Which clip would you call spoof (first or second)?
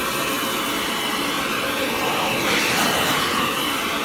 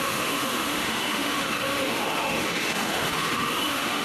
second